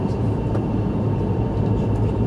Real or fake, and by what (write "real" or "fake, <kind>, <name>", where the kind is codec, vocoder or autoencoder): fake, vocoder, BigVGAN v2